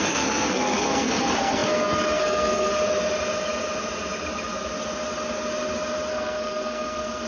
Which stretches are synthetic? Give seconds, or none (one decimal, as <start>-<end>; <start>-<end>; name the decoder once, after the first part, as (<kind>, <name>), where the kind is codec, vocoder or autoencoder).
0.0-2.7 (codec, SNAC); 6.1-7.3